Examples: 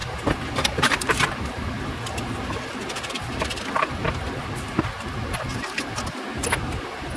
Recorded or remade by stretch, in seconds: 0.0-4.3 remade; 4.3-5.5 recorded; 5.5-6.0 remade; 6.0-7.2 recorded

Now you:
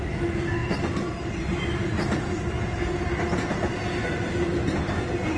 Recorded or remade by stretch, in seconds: 0.0-5.4 recorded